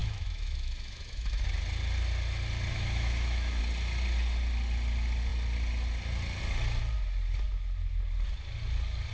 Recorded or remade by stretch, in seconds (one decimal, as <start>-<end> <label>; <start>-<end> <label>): 0.0-1.4 remade; 1.4-2.7 recorded; 2.7-3.6 remade; 3.6-9.1 recorded